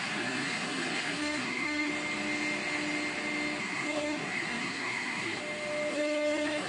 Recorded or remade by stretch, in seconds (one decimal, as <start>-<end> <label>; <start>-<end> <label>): 0.0-1.9 remade; 1.9-3.6 recorded; 3.6-5.4 remade; 5.4-5.9 recorded; 5.9-6.7 remade